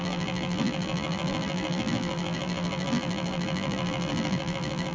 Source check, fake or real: fake